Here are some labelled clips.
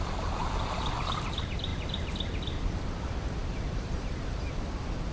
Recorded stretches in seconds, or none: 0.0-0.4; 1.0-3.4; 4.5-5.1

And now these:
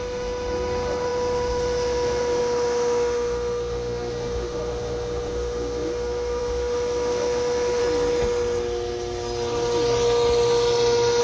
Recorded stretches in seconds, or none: 7.8-11.2

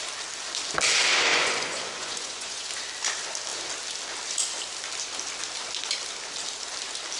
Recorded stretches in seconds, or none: 0.0-1.3; 2.7-7.2